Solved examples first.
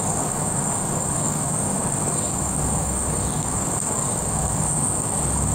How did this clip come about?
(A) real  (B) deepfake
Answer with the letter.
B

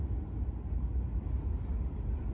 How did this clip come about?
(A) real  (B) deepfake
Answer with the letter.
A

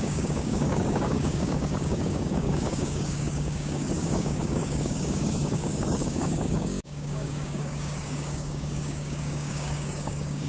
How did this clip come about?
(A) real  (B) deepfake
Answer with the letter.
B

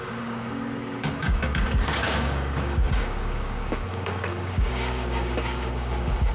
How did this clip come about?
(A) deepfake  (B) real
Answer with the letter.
A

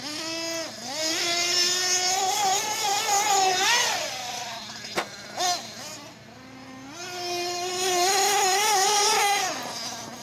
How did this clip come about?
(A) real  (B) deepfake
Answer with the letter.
A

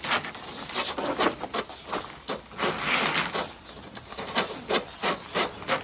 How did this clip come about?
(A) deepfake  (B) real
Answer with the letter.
B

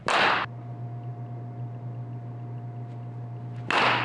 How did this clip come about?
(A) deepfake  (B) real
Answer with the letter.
B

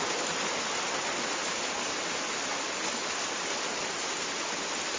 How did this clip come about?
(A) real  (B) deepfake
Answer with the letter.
A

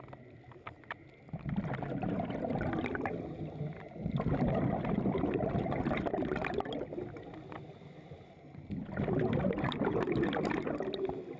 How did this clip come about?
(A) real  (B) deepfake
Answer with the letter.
A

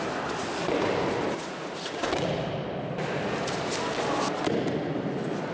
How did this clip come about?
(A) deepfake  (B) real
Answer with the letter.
B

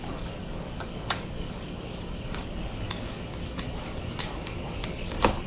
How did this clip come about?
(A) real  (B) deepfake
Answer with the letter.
B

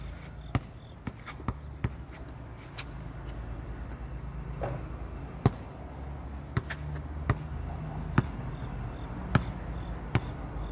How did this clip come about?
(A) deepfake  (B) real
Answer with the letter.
B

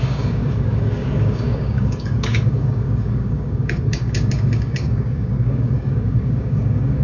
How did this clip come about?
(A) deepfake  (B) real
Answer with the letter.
A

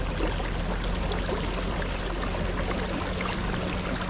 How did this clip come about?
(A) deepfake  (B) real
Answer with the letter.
B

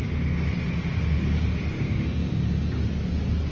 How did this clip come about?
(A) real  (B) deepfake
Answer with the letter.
A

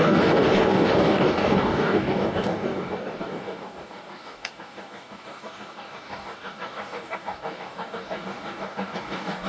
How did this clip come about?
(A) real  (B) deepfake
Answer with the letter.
B